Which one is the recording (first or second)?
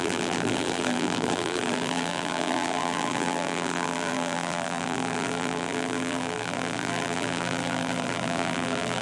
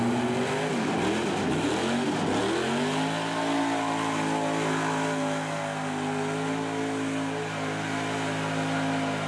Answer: second